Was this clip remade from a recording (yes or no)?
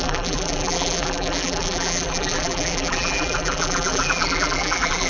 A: yes